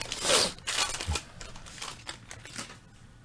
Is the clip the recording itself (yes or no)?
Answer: yes